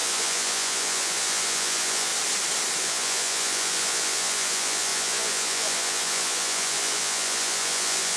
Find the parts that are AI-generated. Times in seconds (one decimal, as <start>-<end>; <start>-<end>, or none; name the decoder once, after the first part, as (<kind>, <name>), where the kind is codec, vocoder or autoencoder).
0.0-2.1 (vocoder, Vocos); 2.8-8.2